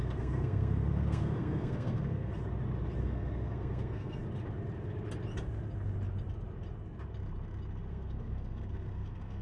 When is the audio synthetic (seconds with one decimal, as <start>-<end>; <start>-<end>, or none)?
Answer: 0.0-2.3; 3.0-4.2; 7.9-9.4

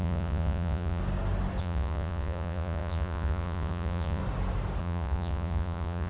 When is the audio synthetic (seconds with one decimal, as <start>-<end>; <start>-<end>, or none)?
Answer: 0.0-1.0; 1.6-4.2; 4.8-6.1